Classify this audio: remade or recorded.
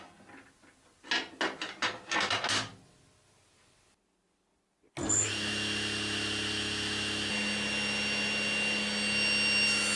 recorded